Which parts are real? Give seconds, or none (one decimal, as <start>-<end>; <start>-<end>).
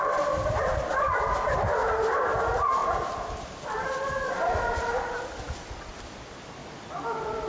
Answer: 0.0-7.5